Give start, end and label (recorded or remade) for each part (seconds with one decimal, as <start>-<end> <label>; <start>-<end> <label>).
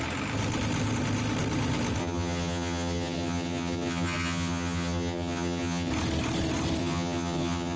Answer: 0.0-2.0 recorded; 2.0-5.9 remade; 5.9-6.8 recorded; 6.8-7.8 remade